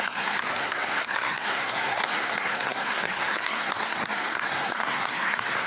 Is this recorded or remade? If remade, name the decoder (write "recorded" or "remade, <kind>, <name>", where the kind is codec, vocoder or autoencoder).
remade, codec, SNAC